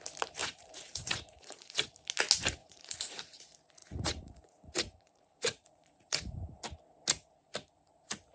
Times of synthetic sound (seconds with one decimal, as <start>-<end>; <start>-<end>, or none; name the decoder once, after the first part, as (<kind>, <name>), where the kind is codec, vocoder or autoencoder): 0.4-1.8 (vocoder, Vocos); 2.6-3.4; 3.8-6.6